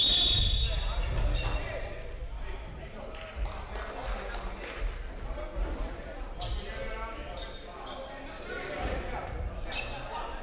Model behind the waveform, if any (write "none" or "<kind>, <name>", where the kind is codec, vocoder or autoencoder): none